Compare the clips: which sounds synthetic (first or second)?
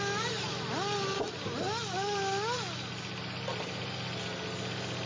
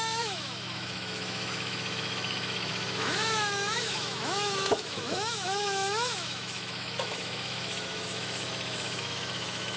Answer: second